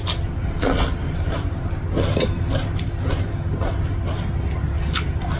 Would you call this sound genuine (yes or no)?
yes